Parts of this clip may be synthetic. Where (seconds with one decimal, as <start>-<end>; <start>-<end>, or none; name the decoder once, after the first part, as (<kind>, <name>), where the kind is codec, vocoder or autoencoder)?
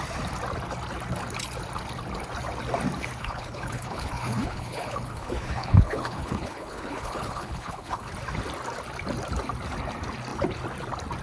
3.2-8.1 (codec, HILCodec)